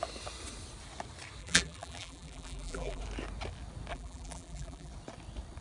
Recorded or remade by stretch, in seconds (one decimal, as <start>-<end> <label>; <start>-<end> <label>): 0.0-1.4 recorded; 1.4-3.0 remade; 3.0-3.9 recorded; 3.9-4.9 remade; 4.9-5.6 recorded